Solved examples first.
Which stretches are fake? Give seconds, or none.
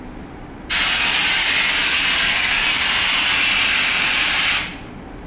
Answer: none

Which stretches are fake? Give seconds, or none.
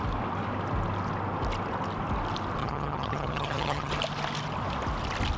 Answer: 2.6-3.9